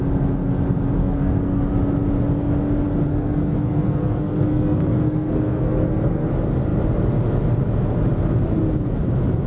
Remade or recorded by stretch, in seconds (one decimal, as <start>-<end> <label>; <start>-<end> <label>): 0.0-1.0 recorded; 1.0-1.7 remade; 1.7-3.1 recorded; 3.1-6.3 remade; 6.3-9.5 recorded